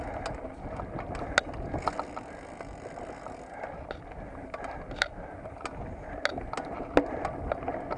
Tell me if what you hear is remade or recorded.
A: recorded